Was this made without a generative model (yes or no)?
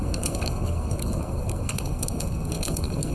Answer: no